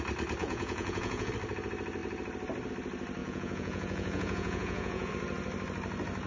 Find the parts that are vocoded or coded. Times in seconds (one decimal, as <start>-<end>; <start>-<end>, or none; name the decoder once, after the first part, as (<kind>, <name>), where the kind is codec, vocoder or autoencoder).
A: 0.4-1.3 (vocoder, Vocos); 3.2-5.1